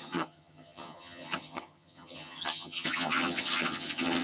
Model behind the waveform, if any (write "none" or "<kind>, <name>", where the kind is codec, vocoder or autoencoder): vocoder, HiFi-GAN